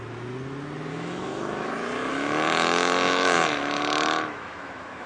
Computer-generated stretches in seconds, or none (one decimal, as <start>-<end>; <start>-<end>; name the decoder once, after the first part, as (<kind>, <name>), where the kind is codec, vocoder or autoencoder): 0.9-1.7 (autoencoder, DAC-VAE); 2.1-5.1